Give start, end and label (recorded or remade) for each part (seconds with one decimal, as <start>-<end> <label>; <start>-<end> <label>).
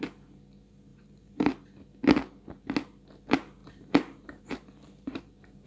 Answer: 0.0-0.9 recorded; 0.9-1.5 remade; 1.5-3.6 recorded; 3.6-5.3 remade; 5.3-5.7 recorded